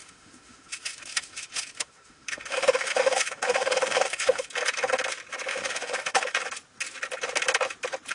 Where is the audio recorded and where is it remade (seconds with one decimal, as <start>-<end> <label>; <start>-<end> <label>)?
0.0-4.5 remade; 4.5-5.5 recorded; 5.5-6.4 remade; 6.4-8.1 recorded